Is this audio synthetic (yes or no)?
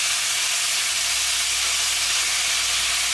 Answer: no